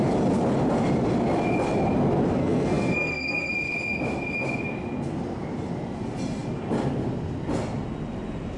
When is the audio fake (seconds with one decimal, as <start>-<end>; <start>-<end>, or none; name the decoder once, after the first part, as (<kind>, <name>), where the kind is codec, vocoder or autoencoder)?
2.4-3.5 (codec, SNAC)